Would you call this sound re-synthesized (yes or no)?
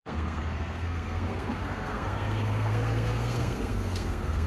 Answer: yes